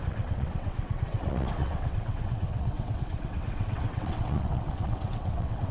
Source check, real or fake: fake